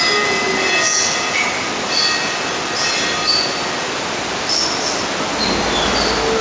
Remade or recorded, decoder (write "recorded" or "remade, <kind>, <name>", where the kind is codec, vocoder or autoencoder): recorded